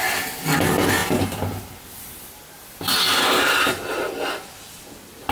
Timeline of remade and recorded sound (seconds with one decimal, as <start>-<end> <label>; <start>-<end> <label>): 0.0-5.3 recorded